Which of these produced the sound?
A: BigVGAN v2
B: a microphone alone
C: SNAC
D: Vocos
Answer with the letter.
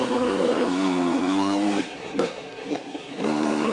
C